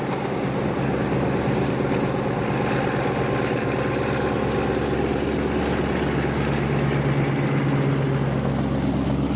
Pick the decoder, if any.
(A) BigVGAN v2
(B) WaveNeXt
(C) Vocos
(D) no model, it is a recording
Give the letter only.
D